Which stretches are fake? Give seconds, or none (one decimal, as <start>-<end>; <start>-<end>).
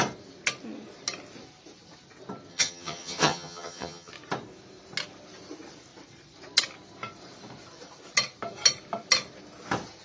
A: 2.5-4.1